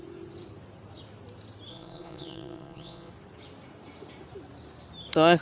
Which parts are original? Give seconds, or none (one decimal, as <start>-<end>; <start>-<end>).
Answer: 0.0-1.7; 3.1-5.4